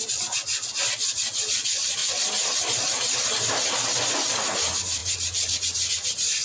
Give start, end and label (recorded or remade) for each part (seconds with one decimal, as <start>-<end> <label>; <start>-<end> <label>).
0.0-6.4 recorded